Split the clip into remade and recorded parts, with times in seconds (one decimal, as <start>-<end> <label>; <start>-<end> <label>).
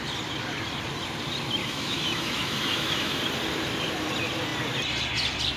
0.0-1.6 recorded; 1.6-3.2 remade; 3.2-5.6 recorded